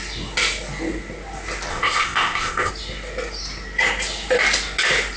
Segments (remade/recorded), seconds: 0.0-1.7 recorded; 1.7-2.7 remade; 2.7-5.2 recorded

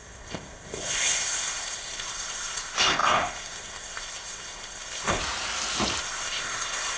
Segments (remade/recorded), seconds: 0.0-5.2 remade; 5.2-6.0 recorded; 6.0-7.0 remade